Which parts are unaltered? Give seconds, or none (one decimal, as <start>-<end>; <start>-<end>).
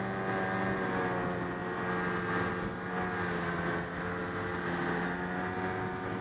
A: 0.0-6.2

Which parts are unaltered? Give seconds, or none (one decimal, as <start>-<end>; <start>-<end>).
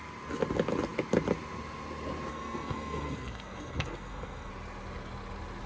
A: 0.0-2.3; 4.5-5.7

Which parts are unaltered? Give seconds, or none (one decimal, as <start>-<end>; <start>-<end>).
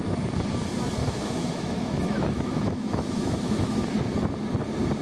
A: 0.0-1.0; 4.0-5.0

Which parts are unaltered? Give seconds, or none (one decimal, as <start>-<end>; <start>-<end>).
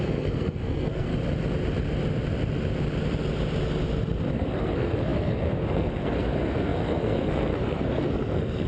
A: 1.1-4.3